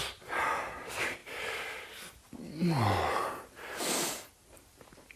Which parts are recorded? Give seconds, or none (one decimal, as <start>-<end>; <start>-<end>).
1.2-3.3